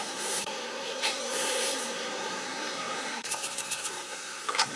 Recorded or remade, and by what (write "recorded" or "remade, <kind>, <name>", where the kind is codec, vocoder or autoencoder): remade, codec, SNAC